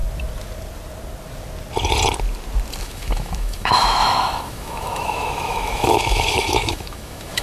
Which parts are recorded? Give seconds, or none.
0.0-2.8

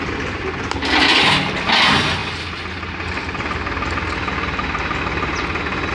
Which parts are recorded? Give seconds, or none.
0.0-5.9

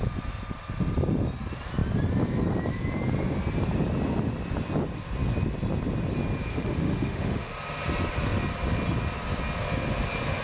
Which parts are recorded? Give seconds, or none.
0.0-6.5; 7.5-10.4

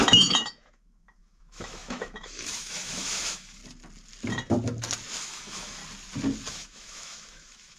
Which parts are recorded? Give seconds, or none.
3.6-5.2; 5.8-6.5

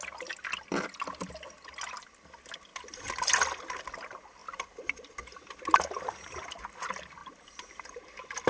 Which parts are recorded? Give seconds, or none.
0.0-8.5

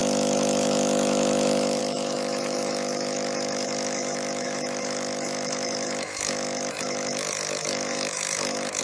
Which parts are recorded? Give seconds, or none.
none

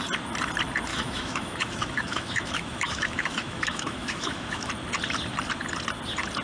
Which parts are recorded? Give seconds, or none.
0.0-0.9; 4.7-6.4